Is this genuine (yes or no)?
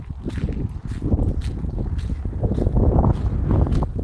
yes